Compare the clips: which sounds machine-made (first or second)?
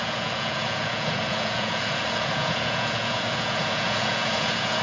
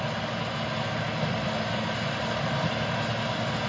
first